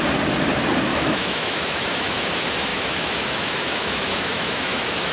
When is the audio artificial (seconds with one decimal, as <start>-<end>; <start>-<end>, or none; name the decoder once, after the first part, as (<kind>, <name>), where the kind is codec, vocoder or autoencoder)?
0.9-2.2 (autoencoder, DAC-VAE); 2.7-5.1